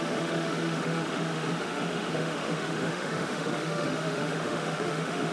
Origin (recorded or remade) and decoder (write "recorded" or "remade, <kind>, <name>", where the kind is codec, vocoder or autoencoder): remade, autoencoder, DAC-VAE